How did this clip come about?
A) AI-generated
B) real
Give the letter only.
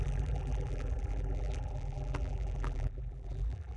A